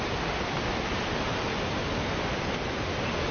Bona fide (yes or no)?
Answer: yes